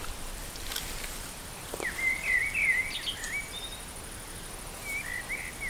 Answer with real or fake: real